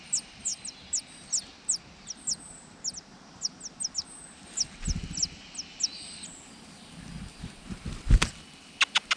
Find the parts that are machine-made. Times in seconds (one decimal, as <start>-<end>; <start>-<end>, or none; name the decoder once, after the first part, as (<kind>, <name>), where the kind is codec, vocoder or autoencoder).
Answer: none